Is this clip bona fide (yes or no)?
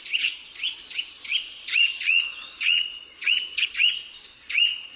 no